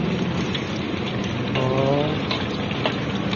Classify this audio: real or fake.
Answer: real